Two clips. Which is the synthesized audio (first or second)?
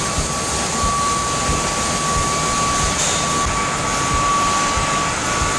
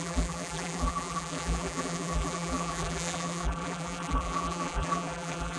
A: second